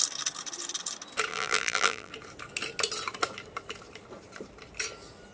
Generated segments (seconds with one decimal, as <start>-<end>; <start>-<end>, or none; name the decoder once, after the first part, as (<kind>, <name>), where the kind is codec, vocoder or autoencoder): 1.3-2.1 (vocoder, BigVGAN v2)